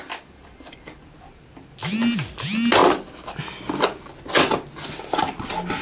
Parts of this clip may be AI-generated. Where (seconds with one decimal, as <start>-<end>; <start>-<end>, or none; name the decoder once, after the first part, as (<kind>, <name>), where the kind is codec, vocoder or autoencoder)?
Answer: none